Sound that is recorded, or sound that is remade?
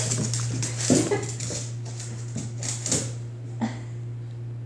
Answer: recorded